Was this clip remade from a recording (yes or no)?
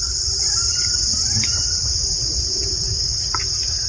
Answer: yes